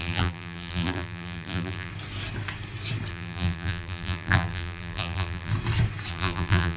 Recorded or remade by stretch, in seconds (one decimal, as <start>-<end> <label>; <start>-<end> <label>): 0.0-1.9 remade; 1.9-3.1 recorded; 3.1-5.5 remade; 5.5-6.1 recorded; 6.1-6.8 remade